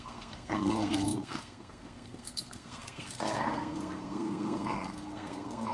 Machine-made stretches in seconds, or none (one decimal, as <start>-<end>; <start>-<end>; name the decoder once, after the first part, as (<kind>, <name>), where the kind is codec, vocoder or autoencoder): 0.0-5.7 (codec, SNAC)